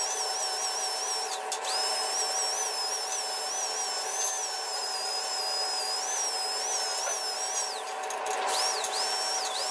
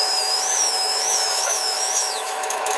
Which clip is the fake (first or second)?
second